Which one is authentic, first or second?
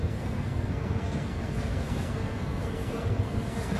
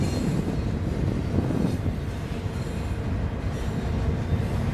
second